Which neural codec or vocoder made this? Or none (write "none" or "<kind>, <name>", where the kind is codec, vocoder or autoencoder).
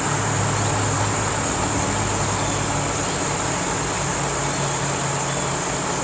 none